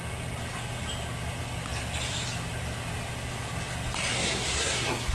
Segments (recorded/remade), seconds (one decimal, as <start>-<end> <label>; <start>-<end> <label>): 0.0-4.1 recorded; 4.1-5.1 remade